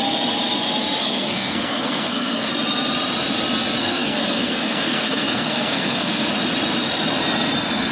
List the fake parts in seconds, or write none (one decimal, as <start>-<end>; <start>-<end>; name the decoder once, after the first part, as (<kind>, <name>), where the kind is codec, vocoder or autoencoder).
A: 1.0-2.5 (codec, SNAC); 3.8-6.3